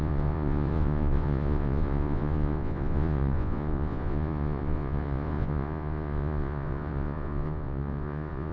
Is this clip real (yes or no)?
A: no